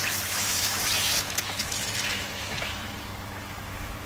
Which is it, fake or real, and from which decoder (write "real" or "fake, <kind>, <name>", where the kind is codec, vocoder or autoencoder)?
fake, autoencoder, DAC-VAE